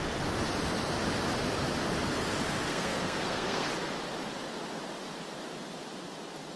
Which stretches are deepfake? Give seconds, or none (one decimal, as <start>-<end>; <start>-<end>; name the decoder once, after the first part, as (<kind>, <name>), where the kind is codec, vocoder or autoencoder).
2.7-3.7 (codec, SNAC)